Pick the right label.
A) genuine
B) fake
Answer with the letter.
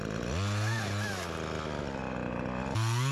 A